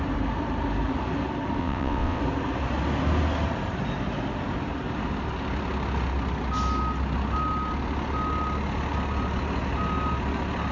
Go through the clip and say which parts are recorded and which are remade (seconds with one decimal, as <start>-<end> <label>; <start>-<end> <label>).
0.0-1.6 recorded; 1.6-2.2 remade; 2.2-10.7 recorded